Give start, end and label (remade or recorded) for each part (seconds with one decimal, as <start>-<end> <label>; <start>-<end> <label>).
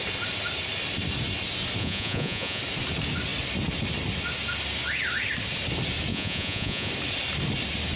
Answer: 0.0-1.8 recorded; 1.8-2.6 remade; 2.6-6.1 recorded; 6.1-6.9 remade; 6.9-8.0 recorded